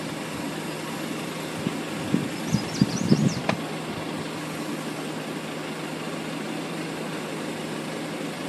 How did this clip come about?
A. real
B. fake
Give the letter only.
A